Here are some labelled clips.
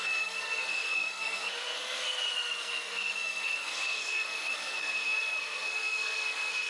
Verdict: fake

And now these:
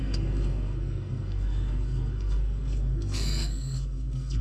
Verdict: fake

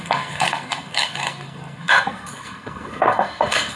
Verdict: fake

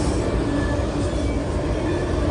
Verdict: real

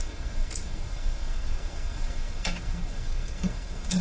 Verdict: fake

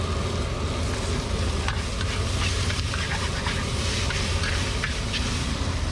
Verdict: real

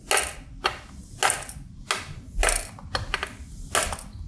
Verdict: real